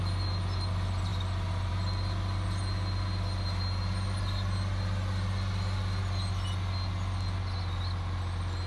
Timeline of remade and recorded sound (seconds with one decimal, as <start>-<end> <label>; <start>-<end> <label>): 0.0-8.7 recorded